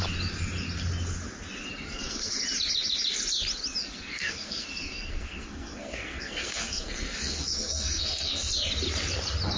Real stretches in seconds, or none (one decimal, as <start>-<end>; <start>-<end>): 0.0-1.8; 2.4-3.8; 8.5-9.6